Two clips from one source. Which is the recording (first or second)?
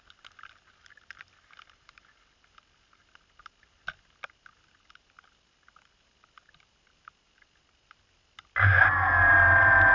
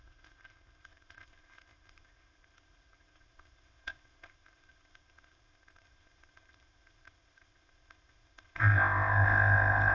first